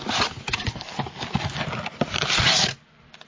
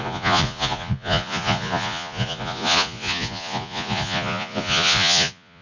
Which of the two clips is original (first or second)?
first